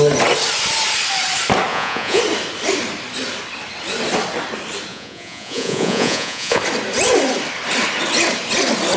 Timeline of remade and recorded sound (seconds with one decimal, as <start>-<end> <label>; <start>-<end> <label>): 0.0-1.7 recorded; 1.7-2.2 remade; 2.2-4.9 recorded; 4.9-6.6 remade; 6.6-9.0 recorded